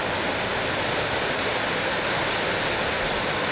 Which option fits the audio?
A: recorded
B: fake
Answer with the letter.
A